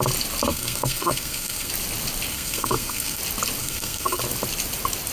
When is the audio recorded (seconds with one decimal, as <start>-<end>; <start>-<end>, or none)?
0.0-0.5; 1.7-2.3; 3.2-3.6; 4.2-5.1